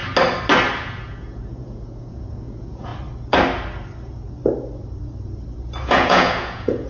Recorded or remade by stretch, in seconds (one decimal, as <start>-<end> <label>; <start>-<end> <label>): 0.0-0.8 recorded; 0.8-2.9 remade; 2.9-5.9 recorded; 5.9-6.9 remade